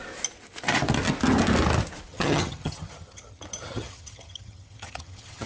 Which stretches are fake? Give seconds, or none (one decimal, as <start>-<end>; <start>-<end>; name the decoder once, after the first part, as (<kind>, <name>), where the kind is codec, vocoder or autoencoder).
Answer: 2.1-5.5 (vocoder, HiFi-GAN)